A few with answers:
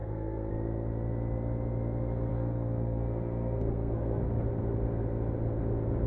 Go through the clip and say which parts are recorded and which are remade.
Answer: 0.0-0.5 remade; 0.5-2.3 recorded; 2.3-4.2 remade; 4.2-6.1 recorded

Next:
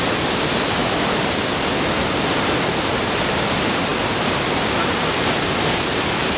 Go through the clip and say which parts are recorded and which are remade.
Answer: 0.0-0.8 remade; 0.8-2.5 recorded; 2.5-6.4 remade

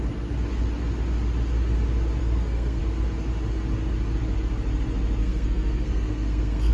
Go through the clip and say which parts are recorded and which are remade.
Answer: 0.0-2.2 recorded; 2.2-2.8 remade; 2.8-5.2 recorded; 5.2-6.7 remade

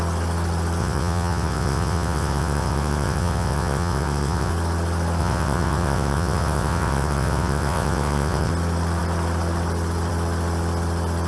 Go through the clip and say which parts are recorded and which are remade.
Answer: 0.0-0.8 recorded; 0.8-4.5 remade; 4.5-5.2 recorded; 5.2-8.5 remade; 8.5-11.3 recorded

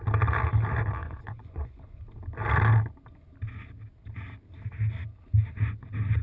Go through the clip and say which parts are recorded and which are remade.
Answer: 0.0-1.0 recorded; 1.0-2.0 remade; 2.0-6.2 recorded

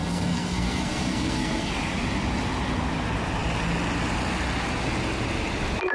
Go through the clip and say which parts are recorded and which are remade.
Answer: 0.0-1.7 remade; 1.7-5.9 recorded